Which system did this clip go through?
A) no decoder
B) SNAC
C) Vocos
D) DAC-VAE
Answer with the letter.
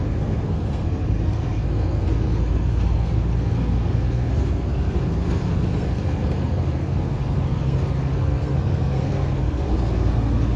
B